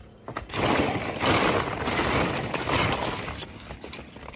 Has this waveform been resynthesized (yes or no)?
no